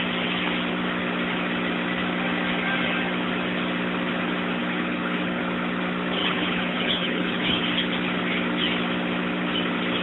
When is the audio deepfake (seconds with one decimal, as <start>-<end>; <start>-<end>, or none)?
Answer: 4.6-5.4; 6.2-7.6